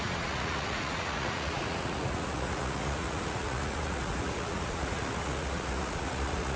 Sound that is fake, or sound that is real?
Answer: fake